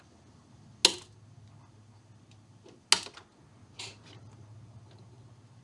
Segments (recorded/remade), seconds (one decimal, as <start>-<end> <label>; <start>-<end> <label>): 0.0-5.6 recorded